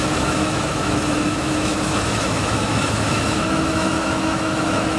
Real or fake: fake